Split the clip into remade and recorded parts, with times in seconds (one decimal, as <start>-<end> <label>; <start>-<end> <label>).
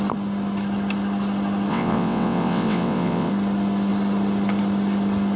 0.0-1.7 recorded; 1.7-3.3 remade; 3.3-5.4 recorded